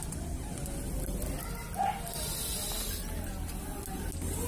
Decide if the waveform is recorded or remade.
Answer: recorded